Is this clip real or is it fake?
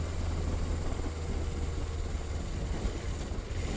real